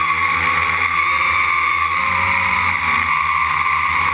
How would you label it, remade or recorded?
recorded